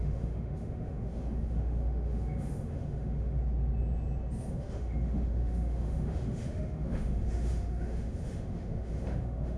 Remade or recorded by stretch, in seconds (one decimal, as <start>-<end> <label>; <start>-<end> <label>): 0.0-3.4 remade; 3.4-4.5 recorded; 4.5-9.6 remade